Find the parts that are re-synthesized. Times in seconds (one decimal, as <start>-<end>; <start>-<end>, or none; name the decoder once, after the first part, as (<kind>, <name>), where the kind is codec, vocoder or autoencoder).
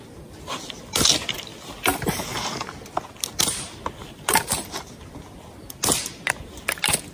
none